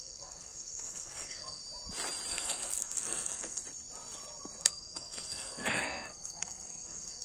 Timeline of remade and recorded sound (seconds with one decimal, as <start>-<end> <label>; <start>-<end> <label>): 0.0-1.6 remade; 1.6-2.3 recorded; 2.3-3.6 remade; 3.6-4.6 recorded; 4.6-7.2 remade